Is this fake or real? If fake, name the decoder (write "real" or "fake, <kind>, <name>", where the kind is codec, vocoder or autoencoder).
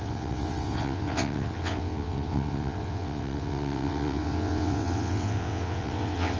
fake, vocoder, WaveNeXt